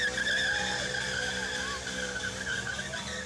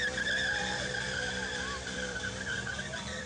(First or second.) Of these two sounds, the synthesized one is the second